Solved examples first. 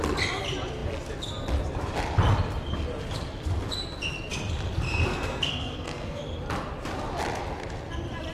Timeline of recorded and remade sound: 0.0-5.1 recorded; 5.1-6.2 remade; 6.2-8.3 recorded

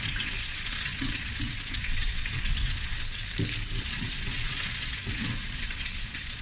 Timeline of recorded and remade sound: 0.0-3.2 remade; 3.2-3.8 recorded; 3.8-6.4 remade

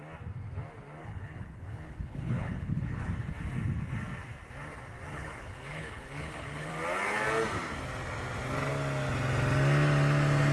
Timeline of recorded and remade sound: 0.0-1.0 recorded; 1.0-3.1 remade; 3.1-5.1 recorded; 5.1-6.7 remade; 6.7-10.5 recorded

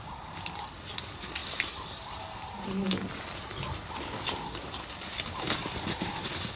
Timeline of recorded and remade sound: 0.0-6.6 recorded

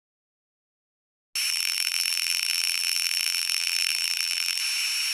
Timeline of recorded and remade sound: 0.0-1.5 recorded; 1.5-4.6 remade; 4.6-5.1 recorded

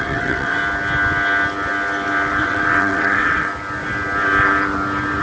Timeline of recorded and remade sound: 0.0-0.6 remade; 0.6-2.4 recorded; 2.4-3.5 remade; 3.5-5.2 recorded

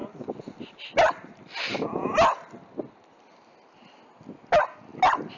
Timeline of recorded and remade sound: 0.0-5.4 recorded